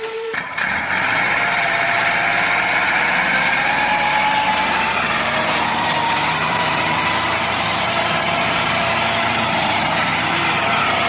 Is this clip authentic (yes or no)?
no